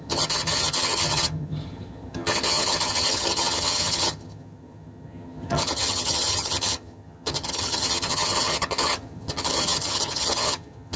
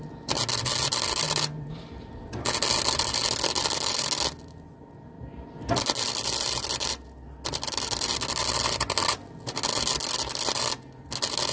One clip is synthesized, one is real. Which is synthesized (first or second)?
first